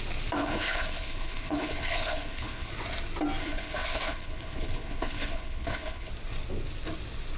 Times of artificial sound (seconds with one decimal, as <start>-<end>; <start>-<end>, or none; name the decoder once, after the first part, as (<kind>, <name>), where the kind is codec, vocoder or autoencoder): 0.4-2.7 (codec, HILCodec); 3.4-6.1